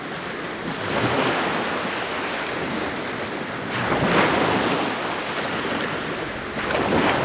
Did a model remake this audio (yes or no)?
no